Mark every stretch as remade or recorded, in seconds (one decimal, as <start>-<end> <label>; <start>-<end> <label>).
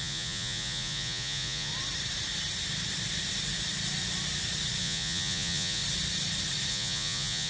0.0-1.7 remade; 1.7-4.8 recorded; 4.8-5.8 remade; 5.8-6.7 recorded; 6.7-7.5 remade